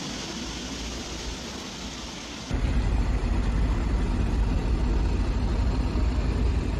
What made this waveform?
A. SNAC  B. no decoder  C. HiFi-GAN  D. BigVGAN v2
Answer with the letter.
B